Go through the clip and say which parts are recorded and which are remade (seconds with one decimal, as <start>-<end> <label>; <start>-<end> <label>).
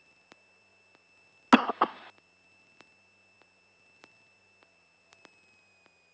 0.0-6.1 recorded